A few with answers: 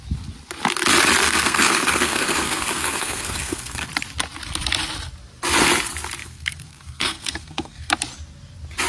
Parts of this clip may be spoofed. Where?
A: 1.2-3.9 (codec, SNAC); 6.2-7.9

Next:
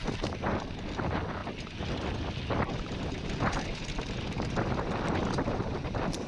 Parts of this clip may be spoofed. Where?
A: none

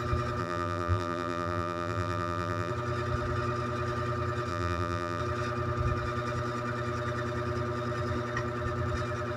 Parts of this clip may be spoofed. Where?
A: 0.4-2.7 (vocoder, BigVGAN v2); 4.5-5.2

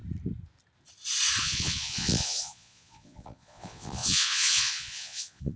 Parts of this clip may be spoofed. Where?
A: 1.4-5.6 (vocoder, Vocos)